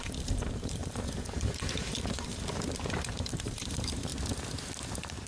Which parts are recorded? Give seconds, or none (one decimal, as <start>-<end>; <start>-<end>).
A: 4.1-5.3